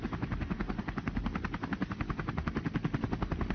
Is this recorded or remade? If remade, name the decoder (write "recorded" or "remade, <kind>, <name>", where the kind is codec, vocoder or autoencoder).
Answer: recorded